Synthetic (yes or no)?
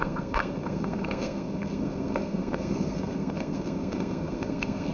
yes